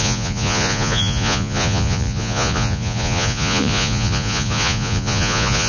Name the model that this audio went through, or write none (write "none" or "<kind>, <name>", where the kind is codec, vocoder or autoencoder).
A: vocoder, Vocos